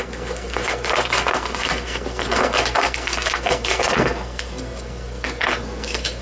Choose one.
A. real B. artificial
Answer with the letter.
B